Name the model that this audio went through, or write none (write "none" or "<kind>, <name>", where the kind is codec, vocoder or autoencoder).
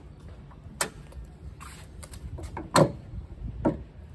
none